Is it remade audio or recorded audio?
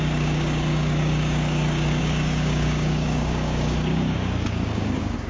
remade